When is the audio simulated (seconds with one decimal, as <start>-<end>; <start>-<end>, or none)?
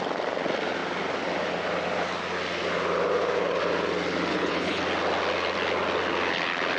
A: 4.3-4.8